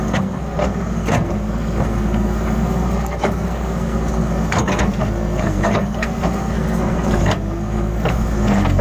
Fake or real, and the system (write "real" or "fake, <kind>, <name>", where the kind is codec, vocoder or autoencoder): fake, codec, SNAC